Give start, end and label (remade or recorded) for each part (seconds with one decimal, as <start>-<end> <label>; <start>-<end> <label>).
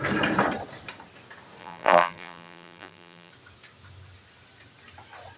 0.0-1.6 recorded; 1.6-3.3 remade; 3.3-5.4 recorded